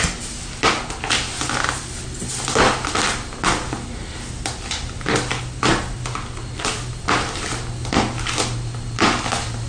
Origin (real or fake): real